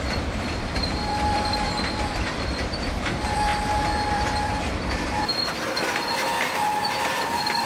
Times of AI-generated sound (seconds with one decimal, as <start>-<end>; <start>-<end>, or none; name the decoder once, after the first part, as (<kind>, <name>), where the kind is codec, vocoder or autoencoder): 0.0-3.5 (vocoder, BigVGAN v2); 4.1-5.3; 6.8-7.7